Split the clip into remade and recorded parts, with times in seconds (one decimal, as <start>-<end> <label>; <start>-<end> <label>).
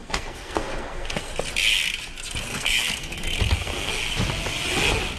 0.0-1.3 remade; 1.3-2.5 recorded; 2.5-3.9 remade; 3.9-5.2 recorded